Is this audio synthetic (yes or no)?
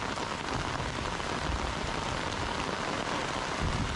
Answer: no